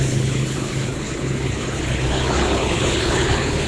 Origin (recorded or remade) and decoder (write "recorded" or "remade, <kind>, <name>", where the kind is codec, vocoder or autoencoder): remade, codec, HILCodec